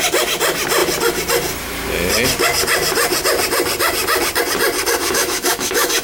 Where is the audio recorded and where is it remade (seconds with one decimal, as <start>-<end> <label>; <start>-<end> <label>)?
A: 0.0-5.0 recorded; 5.0-6.0 remade